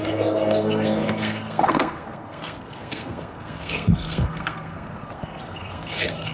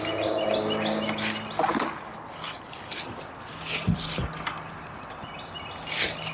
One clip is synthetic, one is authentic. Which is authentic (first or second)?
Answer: second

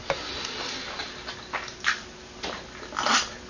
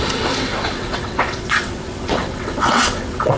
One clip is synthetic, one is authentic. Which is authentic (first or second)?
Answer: first